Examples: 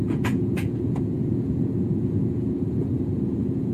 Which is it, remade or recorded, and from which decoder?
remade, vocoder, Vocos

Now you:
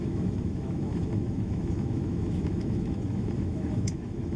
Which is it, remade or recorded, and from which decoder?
remade, autoencoder, DAC-VAE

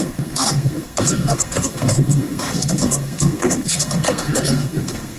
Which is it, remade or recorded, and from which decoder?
remade, codec, SNAC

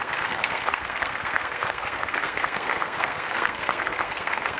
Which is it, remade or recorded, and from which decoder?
remade, codec, SNAC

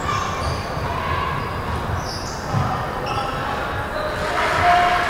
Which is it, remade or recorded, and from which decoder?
recorded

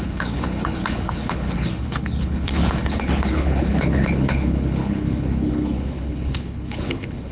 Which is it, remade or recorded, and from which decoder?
remade, codec, HILCodec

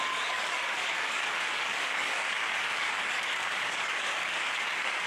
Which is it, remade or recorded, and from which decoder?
remade, codec, DAC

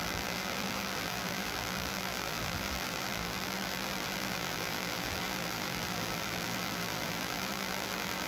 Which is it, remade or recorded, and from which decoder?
remade, vocoder, BigVGAN v2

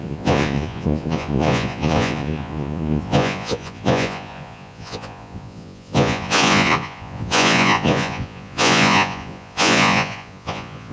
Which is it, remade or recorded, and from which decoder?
remade, vocoder, Vocos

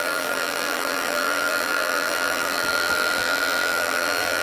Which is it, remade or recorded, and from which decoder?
remade, vocoder, BigVGAN v2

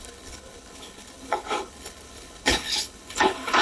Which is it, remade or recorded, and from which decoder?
remade, codec, HILCodec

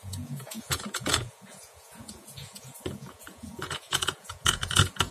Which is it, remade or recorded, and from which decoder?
remade, vocoder, Vocos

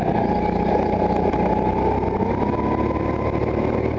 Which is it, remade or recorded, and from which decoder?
recorded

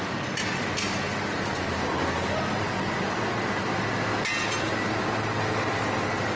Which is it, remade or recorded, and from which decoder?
recorded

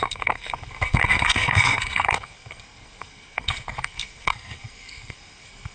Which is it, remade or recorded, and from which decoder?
remade, codec, SNAC